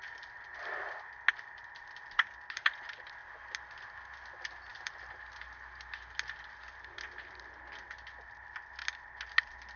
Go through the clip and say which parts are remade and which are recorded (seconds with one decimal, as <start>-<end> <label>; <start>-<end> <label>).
0.0-9.8 recorded